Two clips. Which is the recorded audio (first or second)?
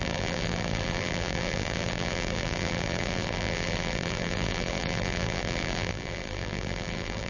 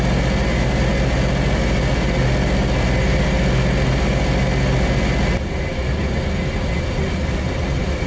second